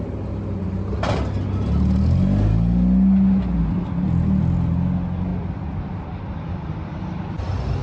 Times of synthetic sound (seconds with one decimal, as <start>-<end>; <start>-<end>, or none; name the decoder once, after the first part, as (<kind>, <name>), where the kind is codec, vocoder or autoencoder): none